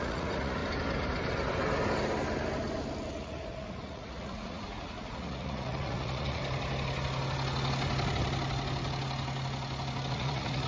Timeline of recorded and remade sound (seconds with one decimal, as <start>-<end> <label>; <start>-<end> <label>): 0.0-0.6 remade; 0.6-3.1 recorded; 3.1-6.4 remade; 6.4-10.1 recorded; 10.1-10.7 remade

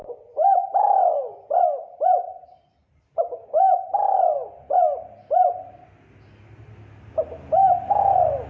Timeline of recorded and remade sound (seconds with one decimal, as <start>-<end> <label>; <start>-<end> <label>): 0.0-8.5 recorded